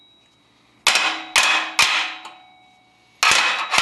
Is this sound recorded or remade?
recorded